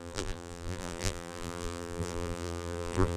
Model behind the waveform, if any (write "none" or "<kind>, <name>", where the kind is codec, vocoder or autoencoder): vocoder, BigVGAN v2